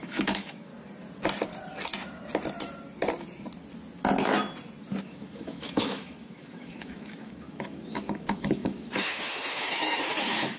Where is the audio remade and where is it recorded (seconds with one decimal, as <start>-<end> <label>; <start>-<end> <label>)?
0.0-0.7 remade; 0.7-5.0 recorded; 5.0-10.6 remade